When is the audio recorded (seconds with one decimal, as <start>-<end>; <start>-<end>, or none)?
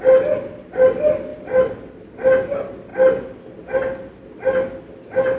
0.0-5.4